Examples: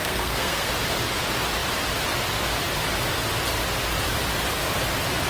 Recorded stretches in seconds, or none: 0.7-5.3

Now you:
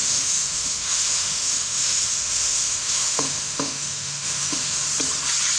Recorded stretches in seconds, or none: 4.8-5.6

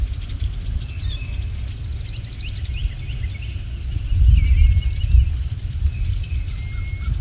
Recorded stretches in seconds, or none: 0.0-7.2

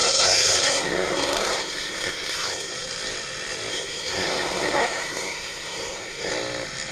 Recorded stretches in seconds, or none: 2.7-3.7; 6.3-6.9